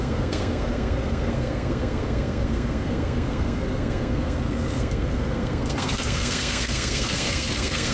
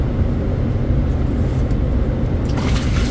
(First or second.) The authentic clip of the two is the second